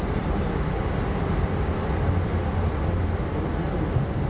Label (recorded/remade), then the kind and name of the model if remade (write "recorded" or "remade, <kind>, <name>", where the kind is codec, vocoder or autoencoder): recorded